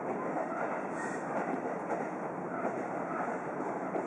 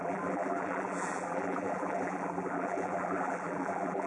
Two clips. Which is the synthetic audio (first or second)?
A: second